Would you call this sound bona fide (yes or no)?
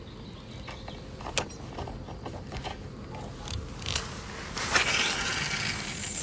yes